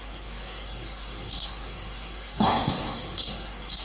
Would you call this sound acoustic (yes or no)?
no